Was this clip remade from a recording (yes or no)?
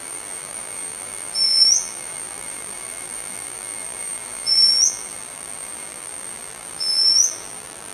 yes